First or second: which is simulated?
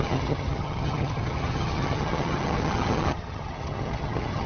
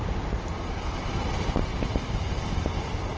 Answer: first